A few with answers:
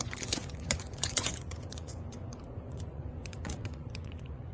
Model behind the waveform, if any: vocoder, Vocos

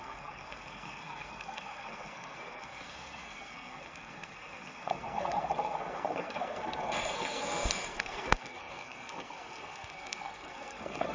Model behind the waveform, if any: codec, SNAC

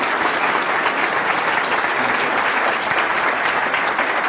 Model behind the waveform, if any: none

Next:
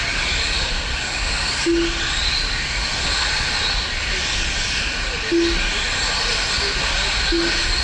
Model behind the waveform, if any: none